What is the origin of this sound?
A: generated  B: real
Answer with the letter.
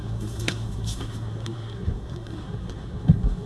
A